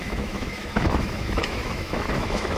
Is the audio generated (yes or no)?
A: yes